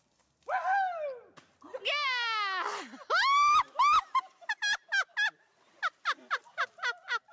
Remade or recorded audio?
recorded